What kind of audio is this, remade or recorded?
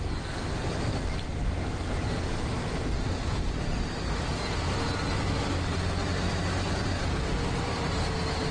recorded